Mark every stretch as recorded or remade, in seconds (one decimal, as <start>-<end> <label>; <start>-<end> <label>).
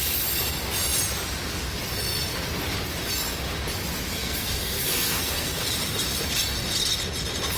0.0-4.1 recorded; 4.1-5.6 remade; 5.6-7.6 recorded